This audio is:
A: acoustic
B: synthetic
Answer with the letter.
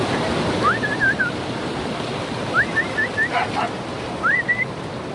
A